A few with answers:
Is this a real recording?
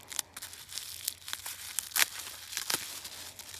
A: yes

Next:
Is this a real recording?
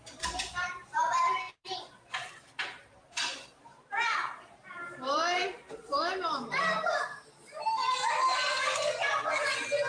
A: no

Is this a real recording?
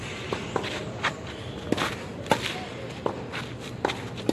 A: yes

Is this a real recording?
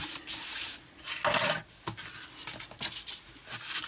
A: yes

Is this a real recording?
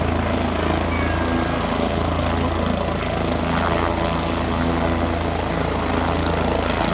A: yes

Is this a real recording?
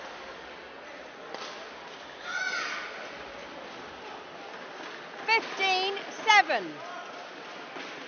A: yes